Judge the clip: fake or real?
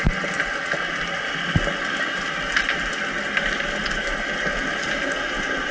real